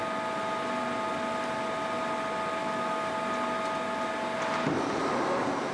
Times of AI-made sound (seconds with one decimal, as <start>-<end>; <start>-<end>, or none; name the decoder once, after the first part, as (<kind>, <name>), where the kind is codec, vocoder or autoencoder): 2.6-3.1 (autoencoder, DAC-VAE)